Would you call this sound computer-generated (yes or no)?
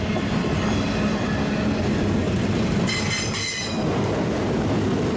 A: no